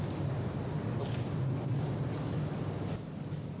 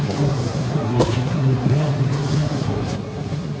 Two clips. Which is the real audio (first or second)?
first